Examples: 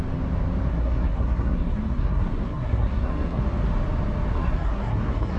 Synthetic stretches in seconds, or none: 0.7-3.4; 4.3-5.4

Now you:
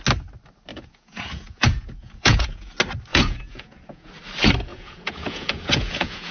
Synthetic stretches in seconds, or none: 0.7-2.7; 3.1-4.1; 4.7-6.3

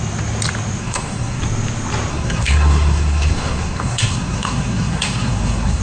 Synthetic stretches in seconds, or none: 0.8-1.4; 2.1-5.8

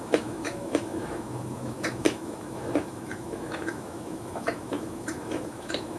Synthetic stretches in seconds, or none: 0.0-6.0